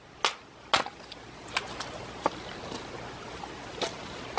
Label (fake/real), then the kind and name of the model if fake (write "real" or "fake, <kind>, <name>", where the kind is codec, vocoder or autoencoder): real